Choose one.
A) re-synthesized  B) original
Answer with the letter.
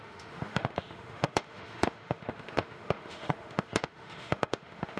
A